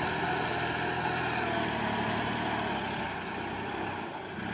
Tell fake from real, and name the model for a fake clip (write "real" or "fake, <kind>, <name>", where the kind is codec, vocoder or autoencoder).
real